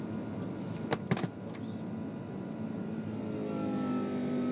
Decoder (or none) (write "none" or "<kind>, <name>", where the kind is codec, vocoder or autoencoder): none